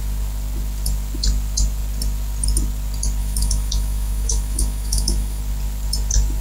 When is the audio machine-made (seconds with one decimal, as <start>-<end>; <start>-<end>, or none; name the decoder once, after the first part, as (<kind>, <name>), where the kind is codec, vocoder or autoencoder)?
3.2-5.4 (autoencoder, DAC-VAE)